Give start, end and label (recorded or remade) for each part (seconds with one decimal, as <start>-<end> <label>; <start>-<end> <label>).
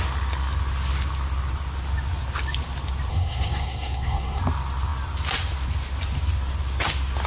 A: 0.0-3.1 recorded; 3.1-4.4 remade; 4.4-7.3 recorded